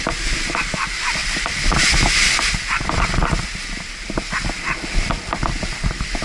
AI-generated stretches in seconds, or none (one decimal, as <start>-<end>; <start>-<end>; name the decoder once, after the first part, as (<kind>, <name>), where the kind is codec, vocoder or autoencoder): none